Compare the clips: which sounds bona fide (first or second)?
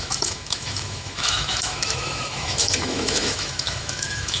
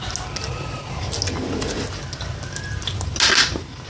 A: second